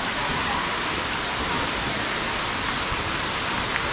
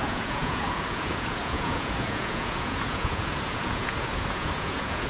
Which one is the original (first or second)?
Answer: first